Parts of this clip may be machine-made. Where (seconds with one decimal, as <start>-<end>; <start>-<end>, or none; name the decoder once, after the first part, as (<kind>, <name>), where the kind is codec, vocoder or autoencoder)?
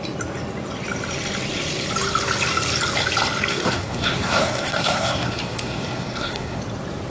3.5-6.6 (codec, SNAC)